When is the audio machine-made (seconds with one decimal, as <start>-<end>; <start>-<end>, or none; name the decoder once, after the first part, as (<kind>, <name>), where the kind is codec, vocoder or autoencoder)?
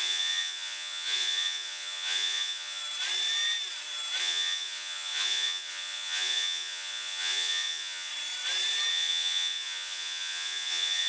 0.0-2.8 (vocoder, Vocos); 4.2-8.1; 8.9-11.1